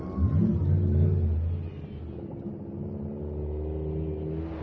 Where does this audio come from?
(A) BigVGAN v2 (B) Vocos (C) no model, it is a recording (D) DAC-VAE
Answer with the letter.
C